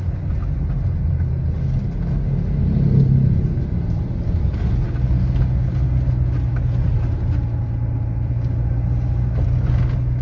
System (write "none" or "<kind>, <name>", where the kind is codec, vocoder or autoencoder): none